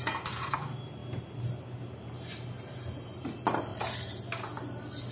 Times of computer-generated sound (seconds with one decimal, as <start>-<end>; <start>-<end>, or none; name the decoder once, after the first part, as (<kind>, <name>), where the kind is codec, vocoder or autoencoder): 0.0-3.7 (vocoder, BigVGAN v2)